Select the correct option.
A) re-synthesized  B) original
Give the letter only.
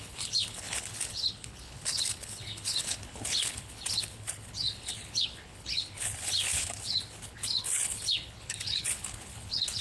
A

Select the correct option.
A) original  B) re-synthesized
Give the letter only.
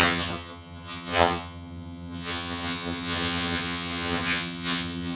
B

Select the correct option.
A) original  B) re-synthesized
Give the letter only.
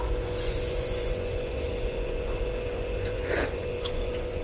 B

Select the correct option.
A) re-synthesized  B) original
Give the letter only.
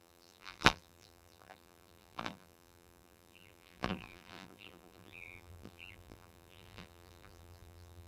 A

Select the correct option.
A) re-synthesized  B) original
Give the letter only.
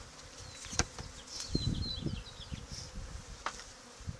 B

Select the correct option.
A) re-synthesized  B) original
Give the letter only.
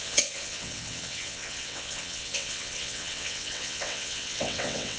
A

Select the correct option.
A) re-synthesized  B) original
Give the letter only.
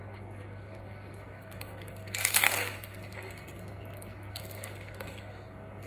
A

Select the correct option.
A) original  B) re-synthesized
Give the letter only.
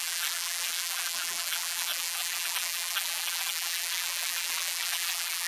B